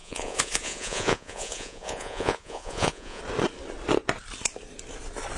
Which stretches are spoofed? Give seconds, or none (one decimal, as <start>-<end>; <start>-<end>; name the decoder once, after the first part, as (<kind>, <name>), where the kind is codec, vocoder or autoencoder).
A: 0.0-3.2 (vocoder, Vocos)